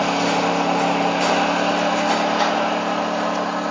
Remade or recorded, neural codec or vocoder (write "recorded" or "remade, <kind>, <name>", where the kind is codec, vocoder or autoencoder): recorded